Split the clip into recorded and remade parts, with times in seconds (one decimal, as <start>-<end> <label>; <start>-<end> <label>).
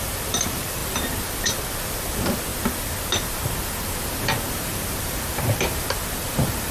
0.0-0.8 remade; 0.8-1.4 recorded; 1.4-2.5 remade; 2.5-4.5 recorded; 4.5-6.7 remade